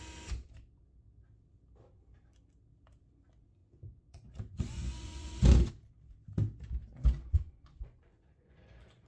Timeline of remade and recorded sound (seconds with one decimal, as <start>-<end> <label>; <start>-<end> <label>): 0.0-3.6 recorded; 3.6-5.7 remade; 5.7-6.8 recorded; 6.8-9.1 remade

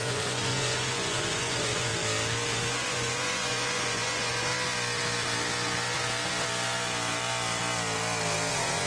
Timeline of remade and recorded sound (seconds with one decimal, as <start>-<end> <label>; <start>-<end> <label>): 0.0-1.9 remade; 1.9-2.6 recorded; 2.6-4.5 remade; 4.5-8.5 recorded; 8.5-8.9 remade